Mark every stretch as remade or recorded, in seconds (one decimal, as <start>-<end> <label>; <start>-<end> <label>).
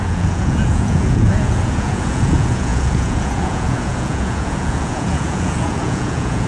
0.0-6.5 remade